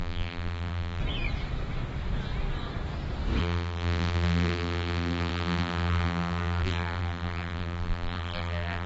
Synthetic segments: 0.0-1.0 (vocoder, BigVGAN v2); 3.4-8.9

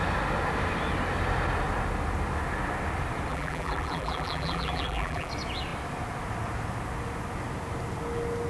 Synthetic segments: 3.3-5.3 (vocoder, BigVGAN v2)

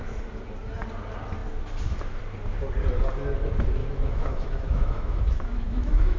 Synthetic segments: 3.8-6.2 (autoencoder, DAC-VAE)

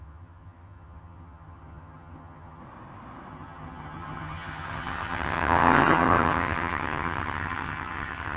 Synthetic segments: 0.0-2.6 (vocoder, HiFi-GAN); 3.3-8.4

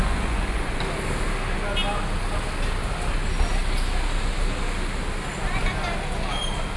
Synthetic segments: 0.0-0.8 (vocoder, Vocos)

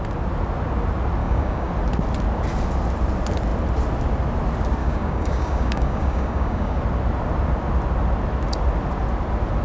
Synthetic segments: 1.2-1.7 (codec, DAC); 4.8-6.8

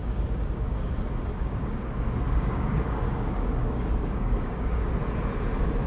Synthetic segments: 0.0-0.9 (codec, DAC); 1.4-4.9

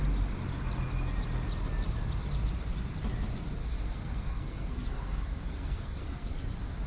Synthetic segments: 3.6-6.4 (codec, SNAC)